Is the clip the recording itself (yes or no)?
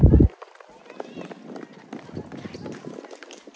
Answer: yes